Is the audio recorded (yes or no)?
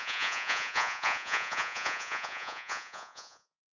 no